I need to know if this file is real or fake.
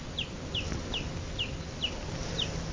real